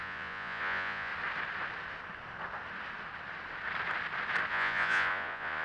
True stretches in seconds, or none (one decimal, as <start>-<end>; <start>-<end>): 1.1-4.5